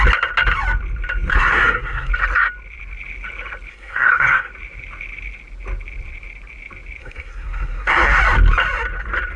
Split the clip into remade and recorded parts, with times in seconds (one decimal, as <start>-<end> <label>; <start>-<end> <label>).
0.0-1.3 recorded; 1.3-2.1 remade; 2.1-3.7 recorded; 3.7-4.5 remade; 4.5-7.0 recorded; 7.0-8.2 remade; 8.2-9.4 recorded